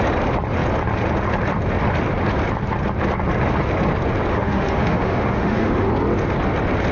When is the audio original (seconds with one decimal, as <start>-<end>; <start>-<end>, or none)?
0.0-4.3; 5.9-6.9